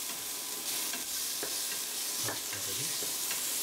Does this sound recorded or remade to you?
recorded